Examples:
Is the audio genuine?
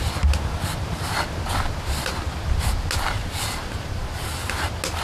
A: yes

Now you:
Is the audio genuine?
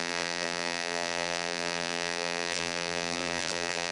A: no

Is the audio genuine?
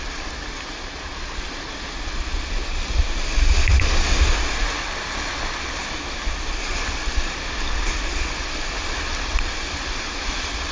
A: yes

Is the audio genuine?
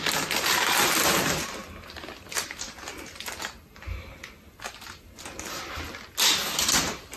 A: yes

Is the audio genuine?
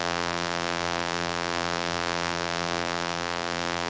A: no